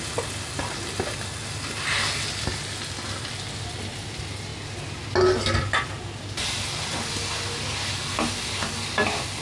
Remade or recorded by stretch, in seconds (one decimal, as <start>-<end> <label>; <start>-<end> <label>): 0.0-9.4 recorded